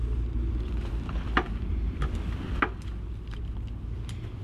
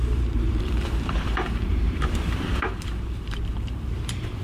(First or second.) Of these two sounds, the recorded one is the first